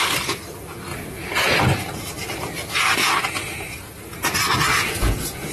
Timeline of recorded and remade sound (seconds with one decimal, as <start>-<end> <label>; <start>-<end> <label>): 0.0-3.0 recorded; 3.0-3.9 remade; 3.9-4.7 recorded; 4.7-5.5 remade

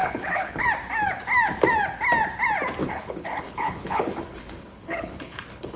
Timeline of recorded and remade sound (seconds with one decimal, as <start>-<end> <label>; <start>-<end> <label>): 0.0-0.6 remade; 0.6-2.8 recorded; 2.8-5.8 remade

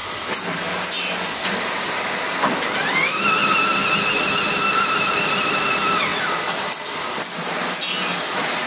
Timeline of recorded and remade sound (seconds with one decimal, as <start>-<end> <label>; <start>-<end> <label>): 0.0-8.7 recorded